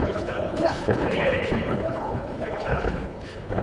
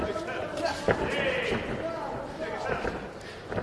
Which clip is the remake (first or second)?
first